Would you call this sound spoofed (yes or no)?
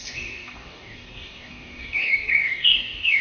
yes